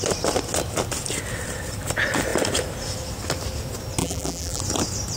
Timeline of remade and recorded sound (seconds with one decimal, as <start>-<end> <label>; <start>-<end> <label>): 0.0-4.0 recorded; 4.0-4.6 remade; 4.6-5.2 recorded